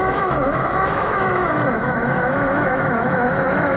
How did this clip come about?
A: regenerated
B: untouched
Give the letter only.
A